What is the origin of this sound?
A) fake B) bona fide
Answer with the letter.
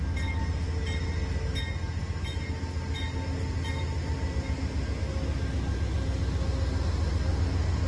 B